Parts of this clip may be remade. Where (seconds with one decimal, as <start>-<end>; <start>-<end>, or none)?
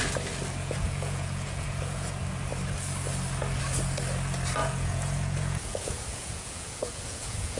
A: 0.6-2.1; 4.6-7.6